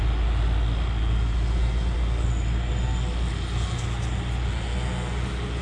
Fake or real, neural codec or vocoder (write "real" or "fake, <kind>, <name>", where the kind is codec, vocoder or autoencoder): real